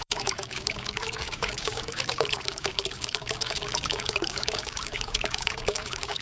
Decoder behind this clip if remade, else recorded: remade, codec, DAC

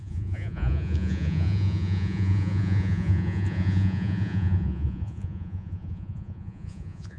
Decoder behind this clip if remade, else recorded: remade, vocoder, Vocos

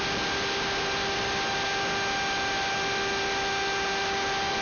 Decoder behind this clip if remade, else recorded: recorded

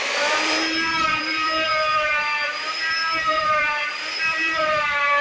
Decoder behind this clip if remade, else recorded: remade, vocoder, BigVGAN v2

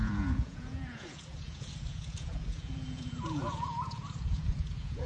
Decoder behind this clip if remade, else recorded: remade, vocoder, Vocos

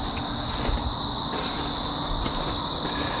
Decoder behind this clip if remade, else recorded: recorded